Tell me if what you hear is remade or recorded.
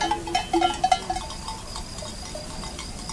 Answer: recorded